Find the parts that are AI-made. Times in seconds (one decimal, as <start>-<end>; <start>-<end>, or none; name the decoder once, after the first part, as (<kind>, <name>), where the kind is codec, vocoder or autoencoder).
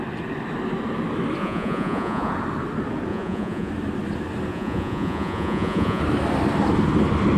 1.4-2.3 (vocoder, Vocos); 3.1-3.7; 4.5-6.0